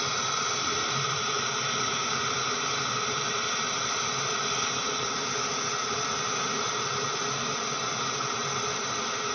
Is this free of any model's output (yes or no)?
yes